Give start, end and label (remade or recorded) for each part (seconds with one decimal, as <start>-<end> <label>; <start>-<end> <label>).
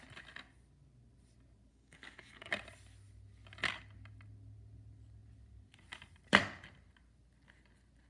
0.0-1.7 recorded; 1.7-2.5 remade; 2.5-8.1 recorded